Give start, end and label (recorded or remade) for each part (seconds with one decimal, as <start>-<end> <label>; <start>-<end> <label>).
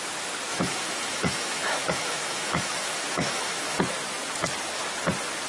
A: 0.0-0.5 recorded; 0.5-3.8 remade; 3.8-5.5 recorded